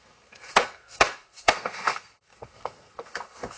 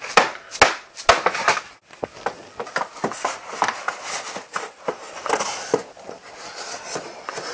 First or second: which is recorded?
second